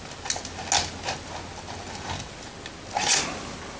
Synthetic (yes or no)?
no